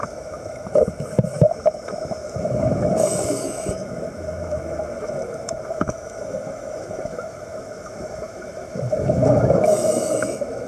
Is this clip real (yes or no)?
no